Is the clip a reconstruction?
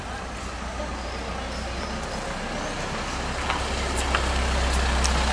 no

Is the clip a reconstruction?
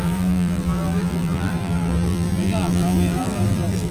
yes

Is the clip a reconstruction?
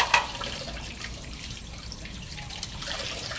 yes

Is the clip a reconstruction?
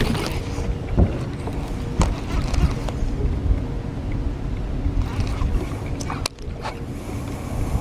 no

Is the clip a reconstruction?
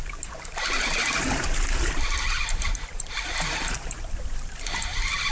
yes